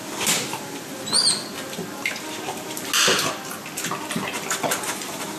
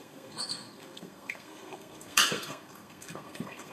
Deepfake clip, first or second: second